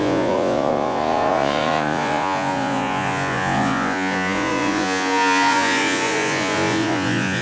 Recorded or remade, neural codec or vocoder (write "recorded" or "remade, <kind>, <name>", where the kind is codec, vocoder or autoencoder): remade, vocoder, Vocos